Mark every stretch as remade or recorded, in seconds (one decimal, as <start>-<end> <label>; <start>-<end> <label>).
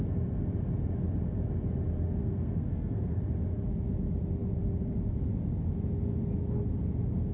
0.0-2.2 recorded; 2.2-3.2 remade; 3.2-7.3 recorded